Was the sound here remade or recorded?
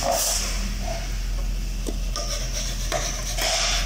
recorded